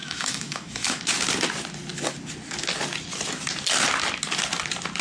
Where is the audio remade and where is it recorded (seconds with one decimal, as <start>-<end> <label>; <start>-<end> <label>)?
0.0-1.0 remade; 1.0-5.0 recorded